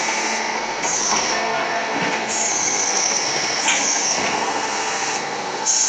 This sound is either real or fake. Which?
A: fake